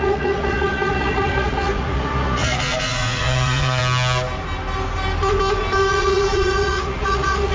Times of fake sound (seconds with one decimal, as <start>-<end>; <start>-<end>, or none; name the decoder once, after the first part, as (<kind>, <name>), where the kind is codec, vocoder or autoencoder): 0.0-3.8 (vocoder, Vocos); 5.9-7.5